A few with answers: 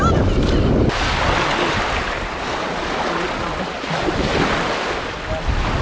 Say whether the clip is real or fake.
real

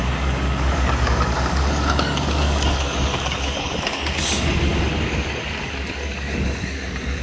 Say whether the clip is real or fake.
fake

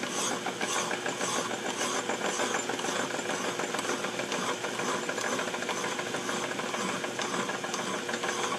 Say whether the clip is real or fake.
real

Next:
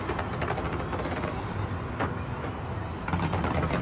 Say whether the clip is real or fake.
real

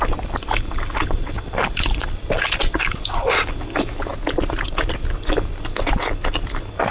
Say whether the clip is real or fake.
real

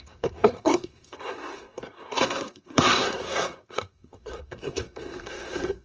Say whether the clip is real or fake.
fake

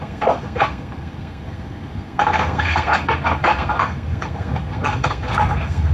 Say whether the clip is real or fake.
fake